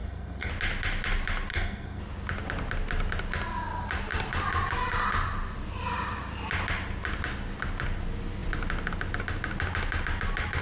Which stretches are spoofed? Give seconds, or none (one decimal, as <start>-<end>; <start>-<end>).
0.0-0.5; 1.5-2.0